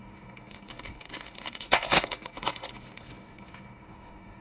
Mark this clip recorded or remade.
remade